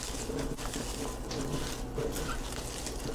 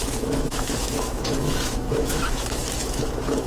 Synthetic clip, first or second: second